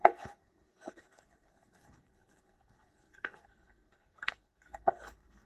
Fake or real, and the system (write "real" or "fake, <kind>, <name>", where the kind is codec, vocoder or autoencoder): fake, codec, SNAC